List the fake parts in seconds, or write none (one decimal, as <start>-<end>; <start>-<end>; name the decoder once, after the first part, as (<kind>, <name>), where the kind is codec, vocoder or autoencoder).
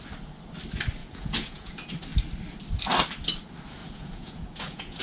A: 1.0-1.7 (vocoder, Vocos); 3.8-5.0